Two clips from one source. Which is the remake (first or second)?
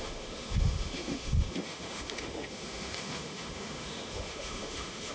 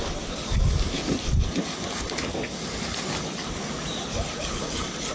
first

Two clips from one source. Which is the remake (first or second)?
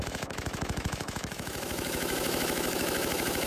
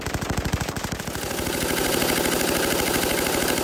first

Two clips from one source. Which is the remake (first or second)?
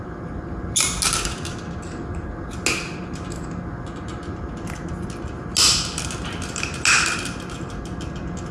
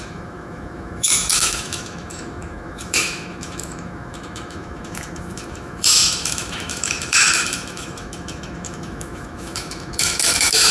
second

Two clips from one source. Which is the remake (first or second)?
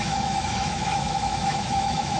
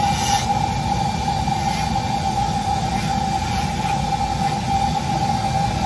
first